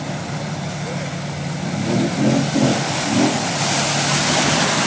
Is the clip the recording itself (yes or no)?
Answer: yes